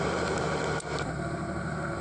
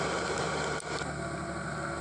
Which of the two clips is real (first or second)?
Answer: second